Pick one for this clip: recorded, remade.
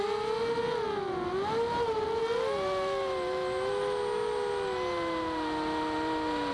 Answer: recorded